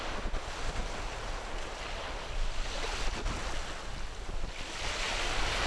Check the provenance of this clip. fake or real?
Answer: real